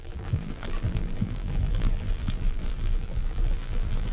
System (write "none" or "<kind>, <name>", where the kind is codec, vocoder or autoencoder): vocoder, BigVGAN v2